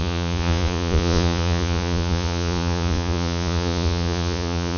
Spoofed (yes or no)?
yes